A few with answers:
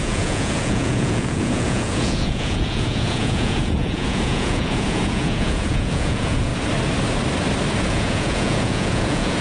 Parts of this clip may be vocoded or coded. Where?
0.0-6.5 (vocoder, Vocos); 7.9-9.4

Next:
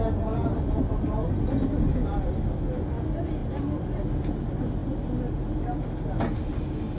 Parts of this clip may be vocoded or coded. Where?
none

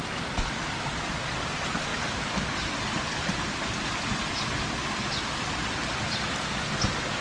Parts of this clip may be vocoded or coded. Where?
none

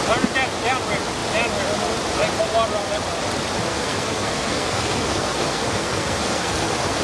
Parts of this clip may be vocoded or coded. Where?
3.7-7.0 (codec, SNAC)

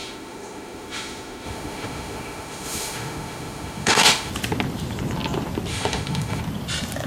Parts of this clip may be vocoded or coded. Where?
0.0-4.3 (autoencoder, DAC-VAE); 5.7-6.4

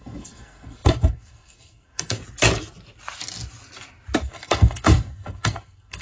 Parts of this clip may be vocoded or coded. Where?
0.0-2.2 (codec, SNAC); 4.2-6.0

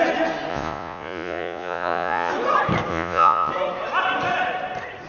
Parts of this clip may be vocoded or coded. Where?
0.5-2.3 (vocoder, Vocos); 2.9-3.5

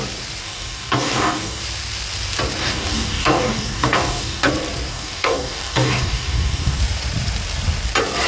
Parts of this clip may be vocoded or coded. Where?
0.4-1.6 (codec, DAC); 2.6-4.5; 4.9-6.8